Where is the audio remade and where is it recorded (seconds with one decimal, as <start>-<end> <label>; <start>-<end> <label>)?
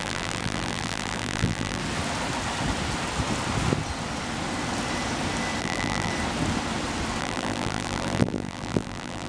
0.0-1.8 remade; 1.8-5.6 recorded; 5.6-6.1 remade; 6.1-7.2 recorded; 7.2-9.3 remade